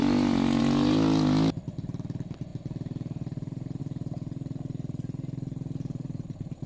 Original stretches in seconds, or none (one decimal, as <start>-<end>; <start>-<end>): 0.0-6.7

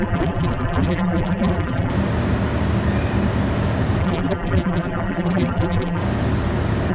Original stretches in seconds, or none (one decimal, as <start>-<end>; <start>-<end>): 1.9-4.0; 6.0-6.9

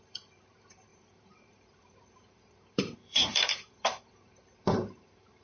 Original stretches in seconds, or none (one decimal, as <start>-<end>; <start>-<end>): none

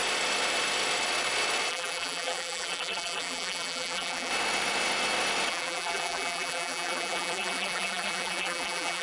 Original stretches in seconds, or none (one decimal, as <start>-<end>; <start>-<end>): 0.0-1.7; 4.3-5.5

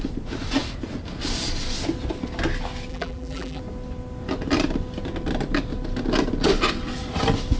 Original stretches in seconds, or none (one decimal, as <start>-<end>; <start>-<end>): 0.0-2.9; 3.6-7.6

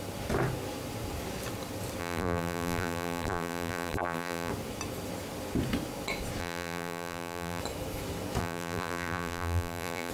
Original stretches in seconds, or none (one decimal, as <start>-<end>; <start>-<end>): 0.0-2.0; 4.5-6.4; 7.6-8.4

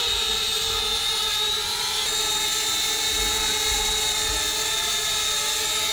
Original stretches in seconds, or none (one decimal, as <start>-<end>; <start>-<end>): 0.0-5.9

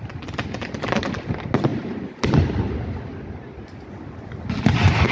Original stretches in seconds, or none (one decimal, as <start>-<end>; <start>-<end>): 0.0-5.1